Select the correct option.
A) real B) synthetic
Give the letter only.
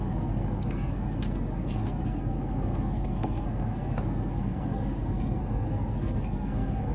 B